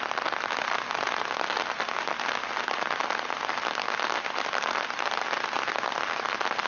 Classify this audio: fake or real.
real